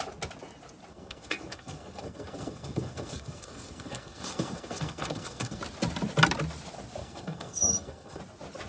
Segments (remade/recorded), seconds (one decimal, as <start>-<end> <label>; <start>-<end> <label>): 0.0-0.9 recorded; 0.9-5.6 remade; 5.6-7.0 recorded; 7.0-8.2 remade; 8.2-8.7 recorded